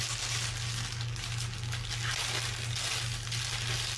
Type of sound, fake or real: real